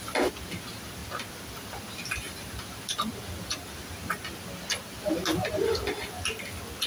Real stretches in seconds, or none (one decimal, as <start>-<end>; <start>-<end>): 0.0-6.9